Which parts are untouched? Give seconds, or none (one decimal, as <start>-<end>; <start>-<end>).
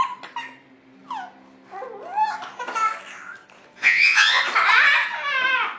0.0-3.8; 4.4-5.8